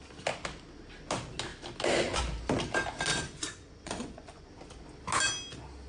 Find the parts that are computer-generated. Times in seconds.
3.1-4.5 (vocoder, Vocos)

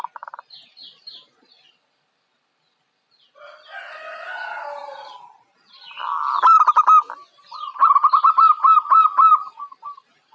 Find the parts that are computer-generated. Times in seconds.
none

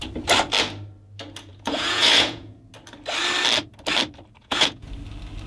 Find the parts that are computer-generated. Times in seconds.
1.5-2.6 (vocoder, Vocos); 4.4-4.9